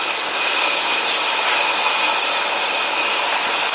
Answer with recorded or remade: recorded